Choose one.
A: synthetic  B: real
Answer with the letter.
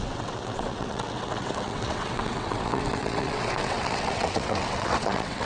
A